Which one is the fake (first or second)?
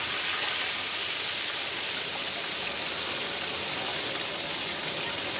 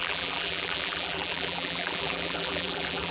second